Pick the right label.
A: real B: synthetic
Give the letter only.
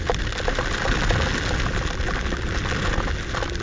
A